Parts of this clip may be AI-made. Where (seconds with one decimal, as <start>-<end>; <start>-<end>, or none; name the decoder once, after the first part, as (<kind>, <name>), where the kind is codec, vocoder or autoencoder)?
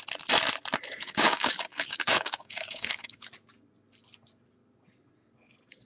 1.0-3.3 (codec, DAC)